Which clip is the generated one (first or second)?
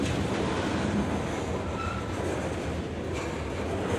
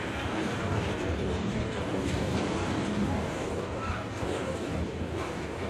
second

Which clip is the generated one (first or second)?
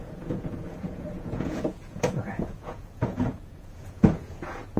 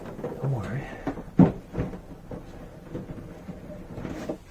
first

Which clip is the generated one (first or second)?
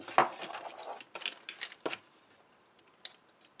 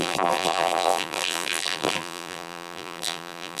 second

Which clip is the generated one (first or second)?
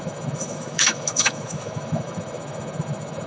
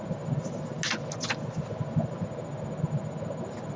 first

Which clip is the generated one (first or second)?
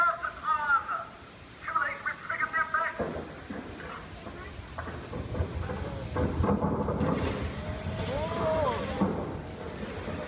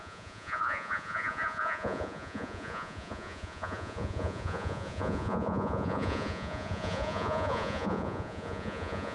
second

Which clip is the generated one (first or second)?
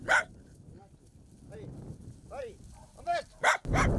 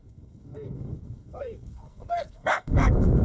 second